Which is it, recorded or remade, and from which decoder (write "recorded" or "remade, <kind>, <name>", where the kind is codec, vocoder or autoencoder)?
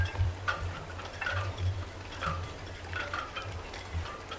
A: remade, vocoder, BigVGAN v2